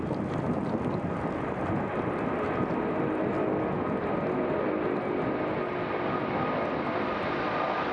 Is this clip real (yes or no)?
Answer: yes